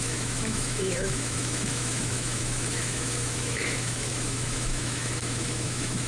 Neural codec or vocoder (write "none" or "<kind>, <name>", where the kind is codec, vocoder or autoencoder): autoencoder, DAC-VAE